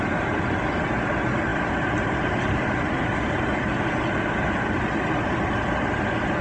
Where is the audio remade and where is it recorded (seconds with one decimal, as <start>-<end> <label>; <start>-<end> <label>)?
0.0-6.4 recorded